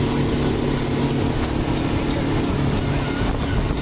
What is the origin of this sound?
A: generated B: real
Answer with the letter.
B